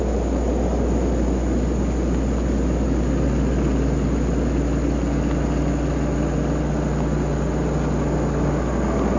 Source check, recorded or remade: recorded